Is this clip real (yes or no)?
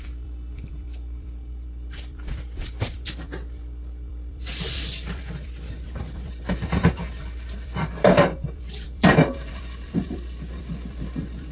no